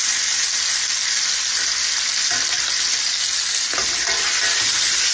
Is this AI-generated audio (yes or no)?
no